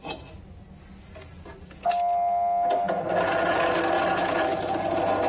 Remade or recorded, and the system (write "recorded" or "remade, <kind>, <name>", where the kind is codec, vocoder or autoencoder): recorded